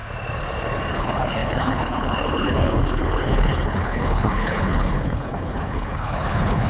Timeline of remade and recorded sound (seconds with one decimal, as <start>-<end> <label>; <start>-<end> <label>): 0.0-0.9 recorded; 0.9-6.7 remade